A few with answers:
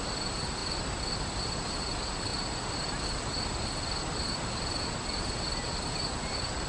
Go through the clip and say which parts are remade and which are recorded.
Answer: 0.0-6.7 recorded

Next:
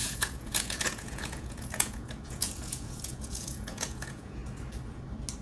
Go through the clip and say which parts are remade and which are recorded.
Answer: 0.0-4.4 remade; 4.4-5.4 recorded

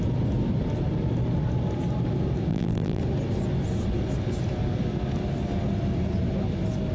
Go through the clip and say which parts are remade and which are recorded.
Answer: 0.0-2.5 recorded; 2.5-3.0 remade; 3.0-6.9 recorded

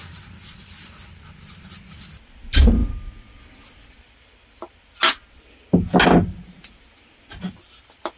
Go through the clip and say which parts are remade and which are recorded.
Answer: 0.0-8.2 recorded

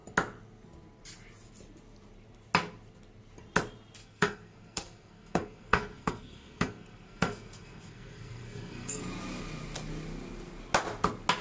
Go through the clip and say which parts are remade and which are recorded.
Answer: 0.0-4.0 recorded; 4.0-9.0 remade; 9.0-11.4 recorded